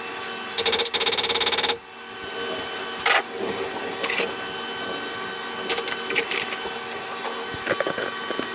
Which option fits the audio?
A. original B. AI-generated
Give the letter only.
A